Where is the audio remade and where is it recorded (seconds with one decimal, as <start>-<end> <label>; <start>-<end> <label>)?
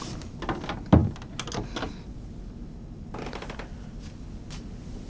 0.0-5.1 recorded